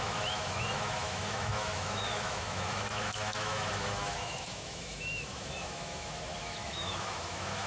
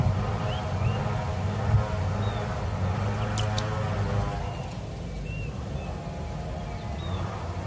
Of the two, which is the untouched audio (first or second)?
second